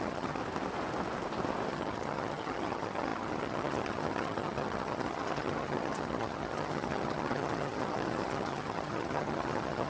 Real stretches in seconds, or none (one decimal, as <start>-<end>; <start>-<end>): 0.4-1.7